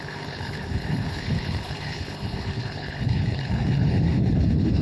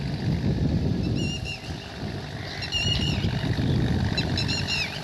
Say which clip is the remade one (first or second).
first